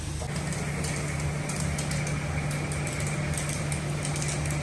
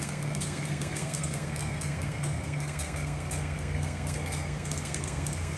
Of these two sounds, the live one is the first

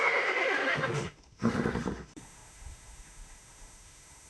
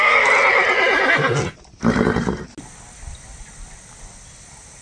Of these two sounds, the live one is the second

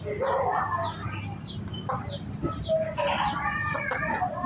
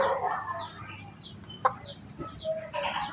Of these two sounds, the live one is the second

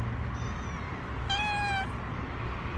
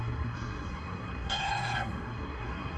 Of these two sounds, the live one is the first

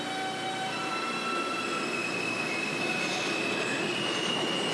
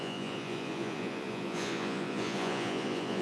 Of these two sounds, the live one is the first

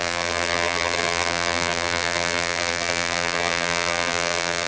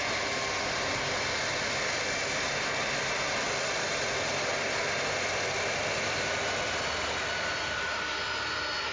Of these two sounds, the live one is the second